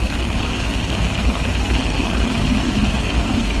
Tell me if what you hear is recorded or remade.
remade